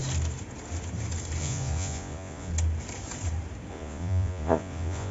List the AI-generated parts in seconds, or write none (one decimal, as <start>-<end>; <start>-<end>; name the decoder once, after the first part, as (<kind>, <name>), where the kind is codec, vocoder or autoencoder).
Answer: 1.4-2.5 (vocoder, Vocos); 3.7-5.1